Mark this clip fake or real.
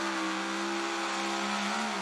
real